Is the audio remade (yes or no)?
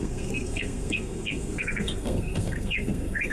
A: yes